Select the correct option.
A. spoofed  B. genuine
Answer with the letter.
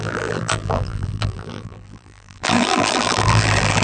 A